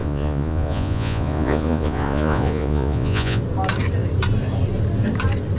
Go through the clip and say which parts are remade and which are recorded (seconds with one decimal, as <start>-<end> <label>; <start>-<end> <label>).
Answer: 0.0-3.4 remade; 3.4-5.6 recorded